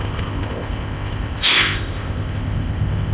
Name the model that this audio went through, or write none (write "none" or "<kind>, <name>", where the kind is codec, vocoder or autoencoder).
codec, ZipCodec